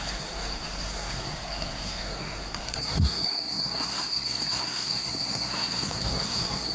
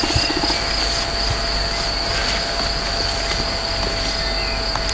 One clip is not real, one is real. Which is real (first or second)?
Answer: second